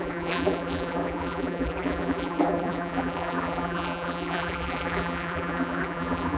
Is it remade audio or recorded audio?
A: remade